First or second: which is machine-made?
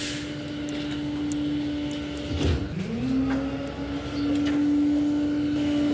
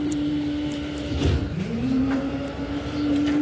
second